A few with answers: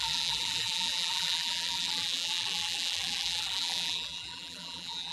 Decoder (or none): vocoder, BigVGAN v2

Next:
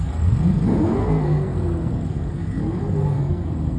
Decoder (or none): codec, SNAC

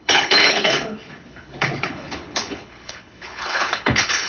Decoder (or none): codec, HILCodec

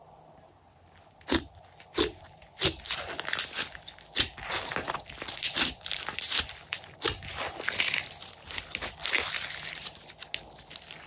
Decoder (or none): none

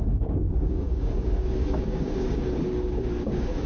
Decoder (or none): codec, DAC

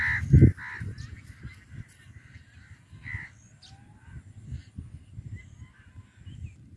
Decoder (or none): none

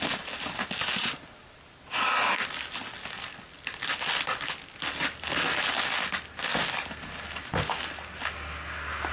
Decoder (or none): none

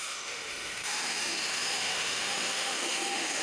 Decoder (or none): autoencoder, DAC-VAE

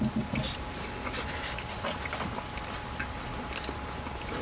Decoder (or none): none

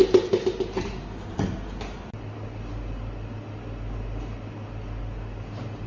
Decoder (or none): none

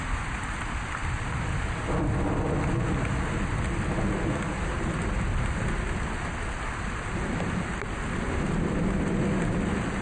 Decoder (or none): none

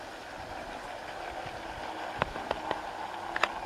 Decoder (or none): none